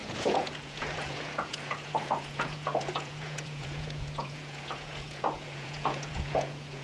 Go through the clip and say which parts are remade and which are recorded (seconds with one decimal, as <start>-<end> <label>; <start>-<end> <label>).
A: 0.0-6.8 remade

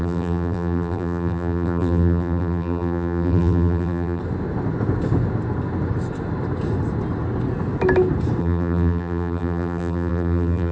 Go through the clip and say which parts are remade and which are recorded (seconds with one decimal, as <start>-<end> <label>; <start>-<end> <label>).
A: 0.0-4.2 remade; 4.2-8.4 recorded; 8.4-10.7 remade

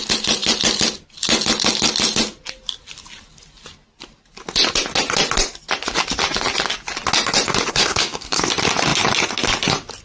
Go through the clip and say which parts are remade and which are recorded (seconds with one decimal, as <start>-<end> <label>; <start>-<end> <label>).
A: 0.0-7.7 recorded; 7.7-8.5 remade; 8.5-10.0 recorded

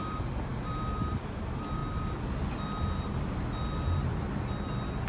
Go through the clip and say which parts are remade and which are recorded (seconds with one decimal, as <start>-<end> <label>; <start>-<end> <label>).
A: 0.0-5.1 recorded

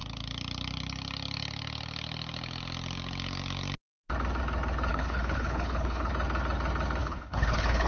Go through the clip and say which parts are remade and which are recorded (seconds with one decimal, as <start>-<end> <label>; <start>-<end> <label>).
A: 0.0-4.9 recorded; 4.9-6.1 remade; 6.1-7.0 recorded; 7.0-7.9 remade